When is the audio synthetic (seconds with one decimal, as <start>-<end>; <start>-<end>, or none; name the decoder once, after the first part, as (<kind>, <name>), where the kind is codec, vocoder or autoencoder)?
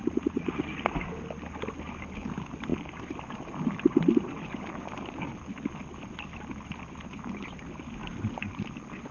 0.0-0.6 (vocoder, Vocos)